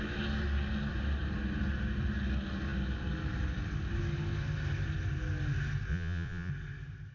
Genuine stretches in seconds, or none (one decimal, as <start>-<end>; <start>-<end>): 0.0-5.9; 6.5-7.1